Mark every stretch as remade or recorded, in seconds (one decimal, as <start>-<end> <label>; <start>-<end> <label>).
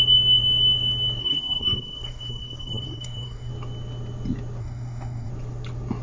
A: 0.0-1.2 recorded; 1.2-3.5 remade; 3.5-4.6 recorded; 4.6-5.3 remade; 5.3-6.0 recorded